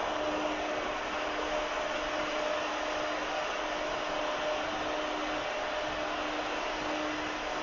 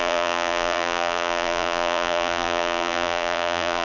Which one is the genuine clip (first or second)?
first